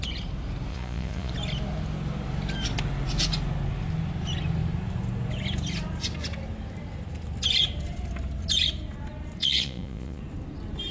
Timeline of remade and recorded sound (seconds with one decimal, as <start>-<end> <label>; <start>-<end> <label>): 0.0-0.7 recorded; 0.7-1.3 remade; 1.3-9.4 recorded; 9.4-10.2 remade; 10.2-10.9 recorded